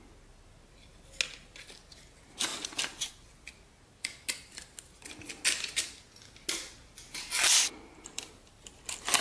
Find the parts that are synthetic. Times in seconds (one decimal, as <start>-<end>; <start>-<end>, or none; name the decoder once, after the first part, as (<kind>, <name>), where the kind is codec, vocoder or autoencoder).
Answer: 2.5-3.1 (vocoder, BigVGAN v2)